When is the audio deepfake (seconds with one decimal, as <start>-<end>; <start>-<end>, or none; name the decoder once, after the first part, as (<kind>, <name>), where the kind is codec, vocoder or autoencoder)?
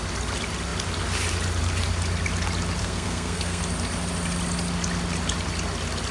2.8-3.6 (codec, SNAC)